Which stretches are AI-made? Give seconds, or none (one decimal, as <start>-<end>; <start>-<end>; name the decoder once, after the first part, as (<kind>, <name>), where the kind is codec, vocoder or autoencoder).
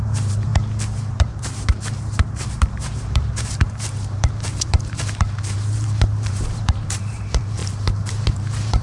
0.0-8.8 (vocoder, BigVGAN v2)